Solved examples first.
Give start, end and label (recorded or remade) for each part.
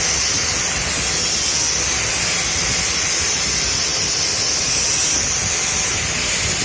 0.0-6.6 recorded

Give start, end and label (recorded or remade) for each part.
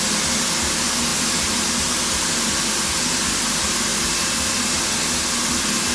0.0-5.9 recorded